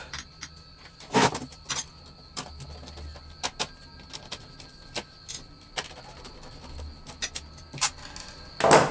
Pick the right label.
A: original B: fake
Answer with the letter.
A